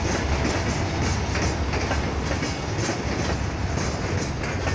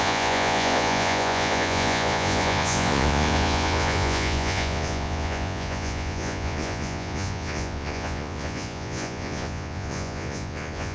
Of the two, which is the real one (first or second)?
first